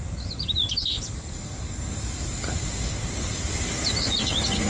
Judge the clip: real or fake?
real